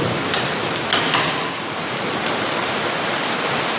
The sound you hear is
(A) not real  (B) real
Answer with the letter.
A